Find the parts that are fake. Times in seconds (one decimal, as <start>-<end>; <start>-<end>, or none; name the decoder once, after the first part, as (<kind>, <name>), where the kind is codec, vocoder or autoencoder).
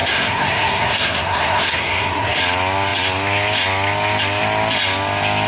0.0-2.4 (codec, SNAC)